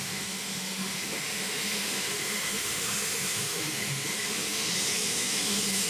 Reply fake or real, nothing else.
fake